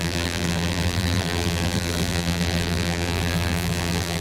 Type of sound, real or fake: fake